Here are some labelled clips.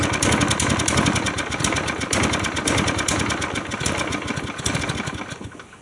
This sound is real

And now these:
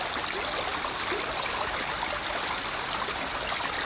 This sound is real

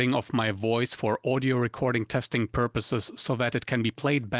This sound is real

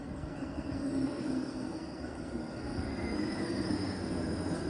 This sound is fake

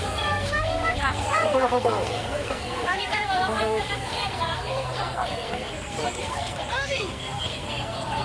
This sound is fake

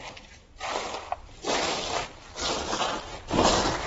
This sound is real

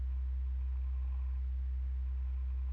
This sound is real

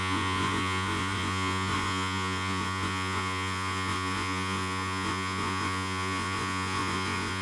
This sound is fake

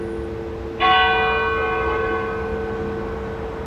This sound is real